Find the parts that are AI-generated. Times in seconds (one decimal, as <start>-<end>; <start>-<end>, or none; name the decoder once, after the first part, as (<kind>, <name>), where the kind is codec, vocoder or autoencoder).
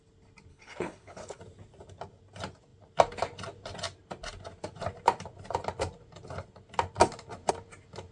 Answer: 0.5-1.4 (codec, HILCodec)